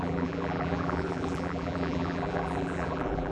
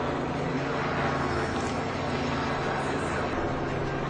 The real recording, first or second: second